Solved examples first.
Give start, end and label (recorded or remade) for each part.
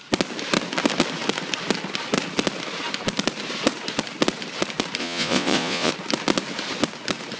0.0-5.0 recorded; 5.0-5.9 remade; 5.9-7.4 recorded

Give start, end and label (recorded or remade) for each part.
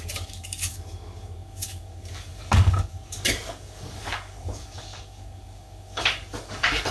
0.0-6.9 remade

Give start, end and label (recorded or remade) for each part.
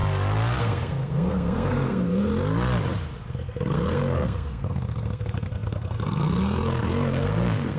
0.0-0.6 recorded; 0.6-2.3 remade; 2.3-3.3 recorded; 3.3-7.8 remade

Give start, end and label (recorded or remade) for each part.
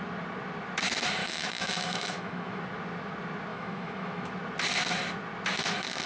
0.0-1.2 recorded; 1.2-2.6 remade; 2.6-3.5 recorded; 3.5-4.3 remade; 4.3-6.1 recorded